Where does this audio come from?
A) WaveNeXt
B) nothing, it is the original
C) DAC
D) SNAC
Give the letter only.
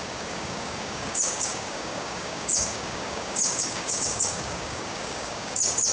C